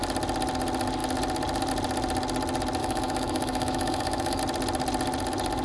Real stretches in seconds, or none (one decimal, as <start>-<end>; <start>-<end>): 0.0-2.8; 4.4-5.6